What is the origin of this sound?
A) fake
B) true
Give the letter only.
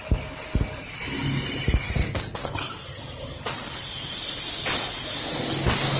B